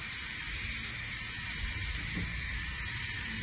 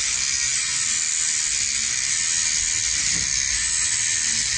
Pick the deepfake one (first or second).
first